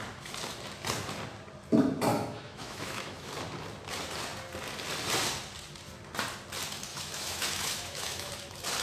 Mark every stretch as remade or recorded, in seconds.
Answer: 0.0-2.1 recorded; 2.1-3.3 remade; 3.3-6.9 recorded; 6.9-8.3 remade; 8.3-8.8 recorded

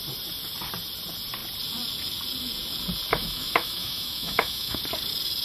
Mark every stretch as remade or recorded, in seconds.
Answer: 0.0-3.2 recorded; 3.2-4.8 remade; 4.8-5.4 recorded

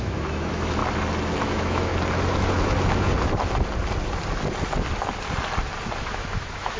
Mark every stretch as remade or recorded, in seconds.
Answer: 0.0-0.8 remade; 0.8-1.4 recorded; 1.4-1.9 remade; 1.9-6.0 recorded; 6.0-6.8 remade

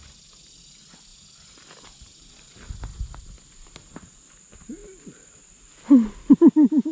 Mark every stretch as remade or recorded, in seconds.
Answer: 0.0-6.9 recorded

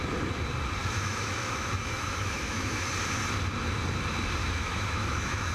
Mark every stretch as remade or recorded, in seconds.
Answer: 0.0-0.8 recorded; 0.8-2.9 remade; 2.9-4.4 recorded; 4.4-5.5 remade

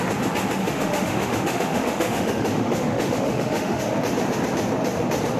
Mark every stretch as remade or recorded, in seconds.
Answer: 0.0-0.6 recorded; 0.6-3.8 remade; 3.8-5.4 recorded

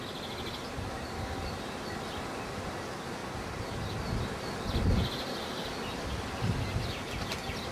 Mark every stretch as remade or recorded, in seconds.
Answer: 0.0-7.7 recorded

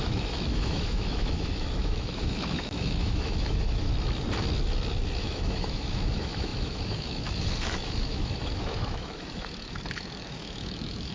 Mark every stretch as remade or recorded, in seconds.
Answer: 0.0-3.9 remade; 3.9-5.2 recorded; 5.2-11.1 remade